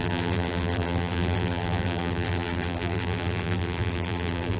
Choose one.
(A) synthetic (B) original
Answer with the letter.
A